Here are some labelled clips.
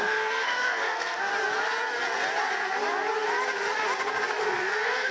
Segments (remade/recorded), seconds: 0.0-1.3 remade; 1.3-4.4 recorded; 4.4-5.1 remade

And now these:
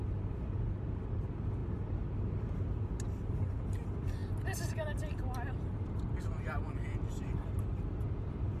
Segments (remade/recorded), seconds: 0.0-8.6 recorded